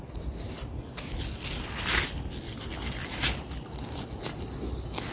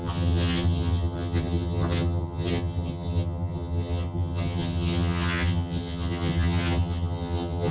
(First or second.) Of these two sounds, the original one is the first